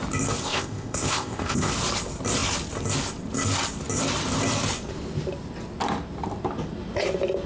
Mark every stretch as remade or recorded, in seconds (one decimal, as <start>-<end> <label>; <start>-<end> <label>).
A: 0.0-0.4 recorded; 0.4-1.7 remade; 1.7-7.5 recorded